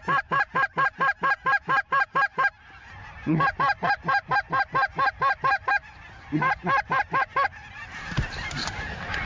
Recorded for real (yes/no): no